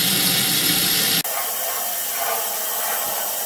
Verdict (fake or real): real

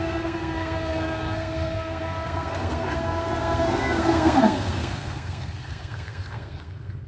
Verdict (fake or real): fake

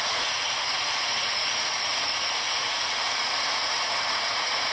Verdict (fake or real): fake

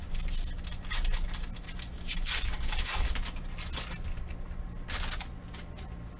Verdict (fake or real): real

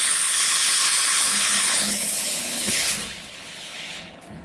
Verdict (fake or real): fake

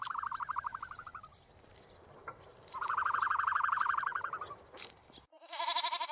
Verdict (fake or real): fake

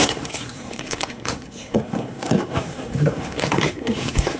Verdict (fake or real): fake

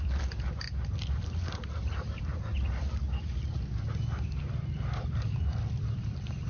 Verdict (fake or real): fake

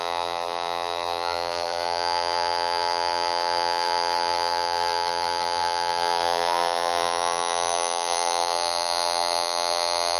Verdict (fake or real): fake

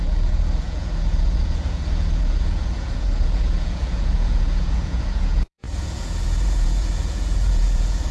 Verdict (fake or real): fake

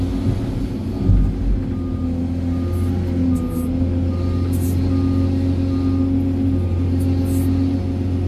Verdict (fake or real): real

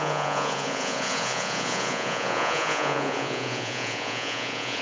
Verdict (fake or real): fake